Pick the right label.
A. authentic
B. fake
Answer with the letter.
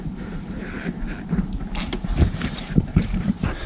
B